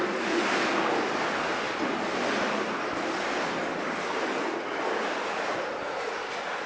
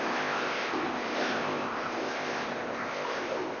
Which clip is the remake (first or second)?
second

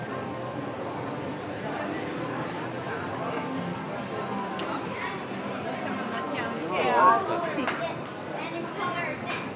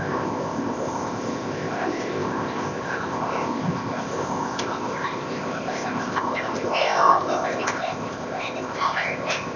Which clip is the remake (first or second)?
second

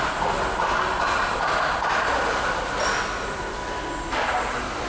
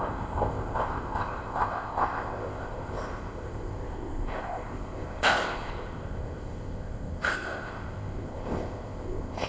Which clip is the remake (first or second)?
second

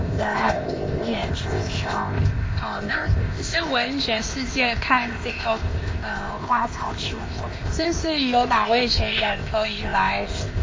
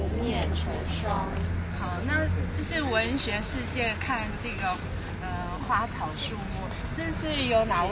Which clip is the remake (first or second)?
first